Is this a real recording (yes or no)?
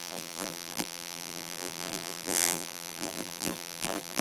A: no